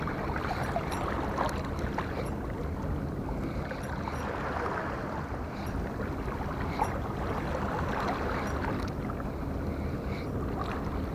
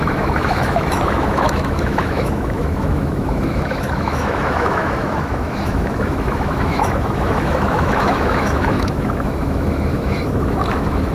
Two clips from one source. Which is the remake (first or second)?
second